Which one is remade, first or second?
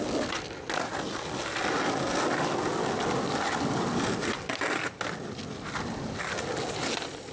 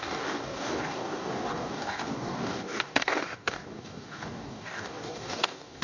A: second